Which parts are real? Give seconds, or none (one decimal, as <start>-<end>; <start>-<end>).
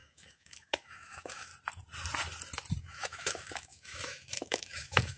1.5-2.8